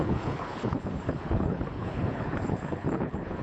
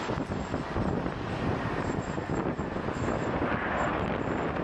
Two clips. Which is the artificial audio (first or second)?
first